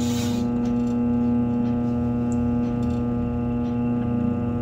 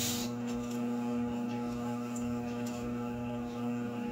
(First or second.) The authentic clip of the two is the first